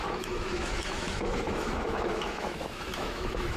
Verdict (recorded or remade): remade